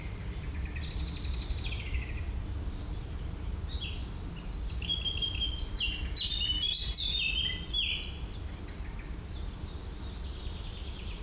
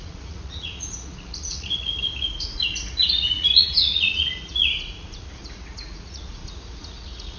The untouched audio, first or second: first